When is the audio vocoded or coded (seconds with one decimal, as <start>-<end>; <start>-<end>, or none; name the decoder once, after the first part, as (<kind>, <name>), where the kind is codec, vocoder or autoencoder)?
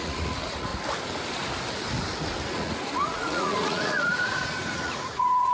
0.0-0.7 (vocoder, Vocos); 2.5-5.5